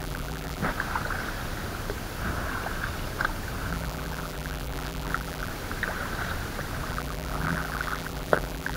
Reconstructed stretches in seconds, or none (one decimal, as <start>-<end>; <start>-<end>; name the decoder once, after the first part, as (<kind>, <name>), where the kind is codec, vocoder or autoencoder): 0.0-0.6 (vocoder, BigVGAN v2); 3.7-5.5; 6.9-8.8